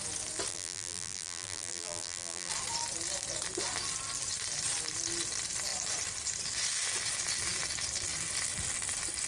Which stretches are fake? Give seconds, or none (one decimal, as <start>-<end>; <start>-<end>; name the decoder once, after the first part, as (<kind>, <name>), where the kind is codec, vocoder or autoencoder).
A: 0.5-2.5 (vocoder, BigVGAN v2)